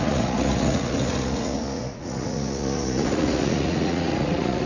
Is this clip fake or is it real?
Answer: fake